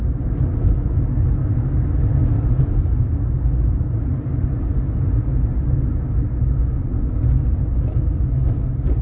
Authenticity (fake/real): real